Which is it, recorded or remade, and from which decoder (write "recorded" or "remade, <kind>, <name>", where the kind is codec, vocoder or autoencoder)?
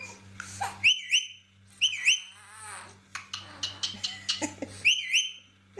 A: recorded